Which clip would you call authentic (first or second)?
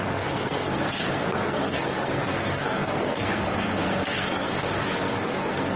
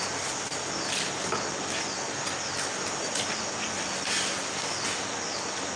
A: second